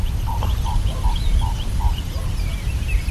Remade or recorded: remade